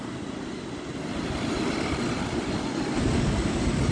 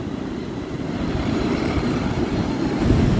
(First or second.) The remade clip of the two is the second